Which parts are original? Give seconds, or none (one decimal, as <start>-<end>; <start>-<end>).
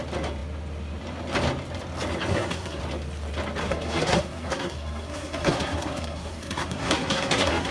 0.0-2.3; 2.8-3.6